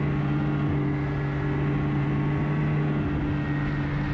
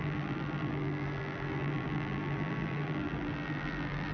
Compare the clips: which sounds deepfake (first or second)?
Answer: second